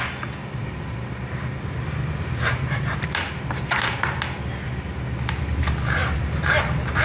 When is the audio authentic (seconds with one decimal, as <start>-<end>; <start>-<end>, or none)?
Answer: 0.0-0.4; 4.0-6.0